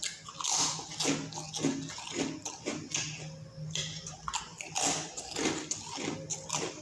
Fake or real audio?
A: real